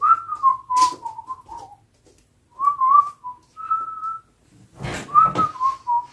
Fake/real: real